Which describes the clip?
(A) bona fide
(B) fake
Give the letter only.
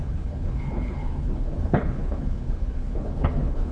B